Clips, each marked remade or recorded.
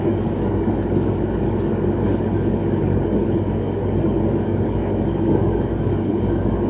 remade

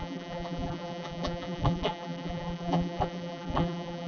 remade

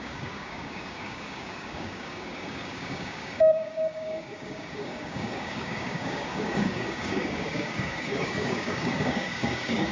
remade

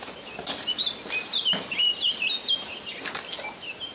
recorded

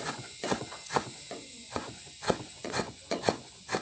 remade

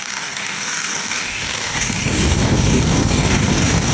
remade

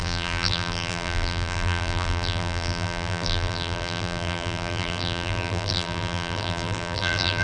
remade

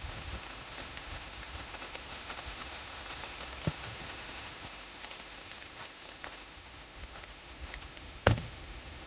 remade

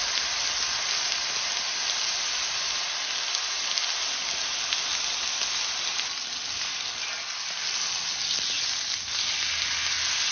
recorded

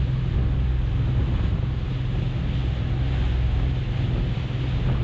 recorded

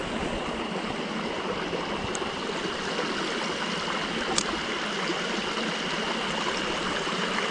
recorded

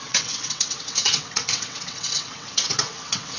remade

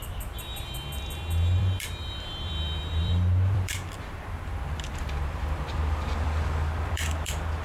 remade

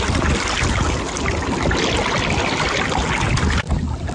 recorded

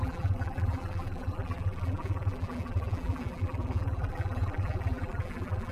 remade